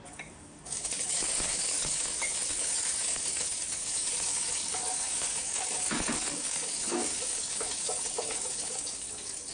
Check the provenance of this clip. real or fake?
fake